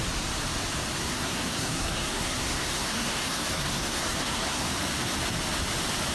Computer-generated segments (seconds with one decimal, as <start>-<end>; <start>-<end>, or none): 1.0-4.7